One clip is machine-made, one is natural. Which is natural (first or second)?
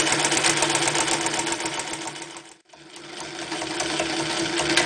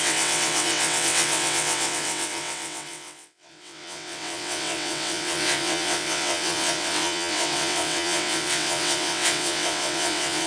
first